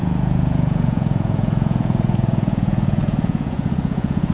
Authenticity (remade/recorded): remade